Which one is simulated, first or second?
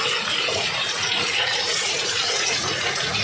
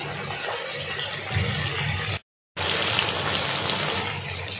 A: first